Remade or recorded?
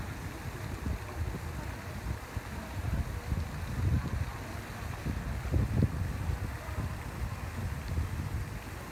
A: recorded